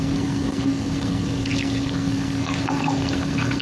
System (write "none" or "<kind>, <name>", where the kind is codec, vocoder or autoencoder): codec, SNAC